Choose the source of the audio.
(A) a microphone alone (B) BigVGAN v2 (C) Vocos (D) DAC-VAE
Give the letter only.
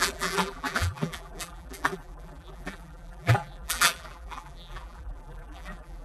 B